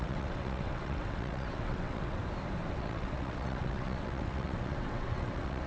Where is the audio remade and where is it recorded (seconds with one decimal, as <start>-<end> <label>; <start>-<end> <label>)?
0.0-2.2 remade; 2.2-2.7 recorded; 2.7-5.7 remade